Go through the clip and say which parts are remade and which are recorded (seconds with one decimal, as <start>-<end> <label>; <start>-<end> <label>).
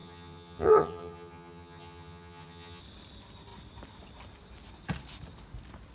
0.0-2.8 remade; 2.8-5.9 recorded